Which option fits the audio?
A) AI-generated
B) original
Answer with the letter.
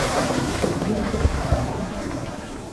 A